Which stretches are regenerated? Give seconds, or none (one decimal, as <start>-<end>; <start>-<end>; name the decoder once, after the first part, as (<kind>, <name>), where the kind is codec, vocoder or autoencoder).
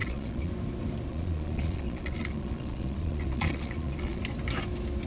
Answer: 0.0-0.5 (vocoder, Vocos); 1.1-4.2